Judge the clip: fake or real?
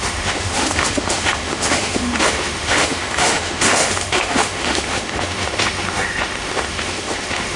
fake